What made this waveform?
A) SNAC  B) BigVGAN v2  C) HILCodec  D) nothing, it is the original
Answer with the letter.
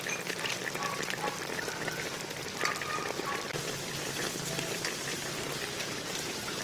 B